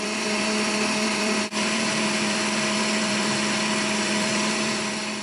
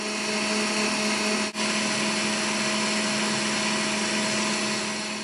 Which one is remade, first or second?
first